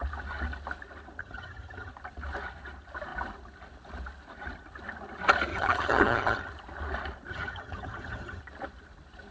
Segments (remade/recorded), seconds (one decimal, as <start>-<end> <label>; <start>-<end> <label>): 0.0-1.2 recorded; 1.2-1.9 remade; 1.9-5.5 recorded; 5.5-6.5 remade; 6.5-7.3 recorded; 7.3-8.4 remade; 8.4-9.3 recorded